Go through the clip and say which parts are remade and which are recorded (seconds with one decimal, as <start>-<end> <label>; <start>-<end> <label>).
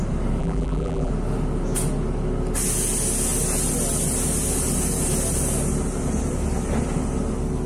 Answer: 0.0-0.4 recorded; 0.4-1.1 remade; 1.1-7.7 recorded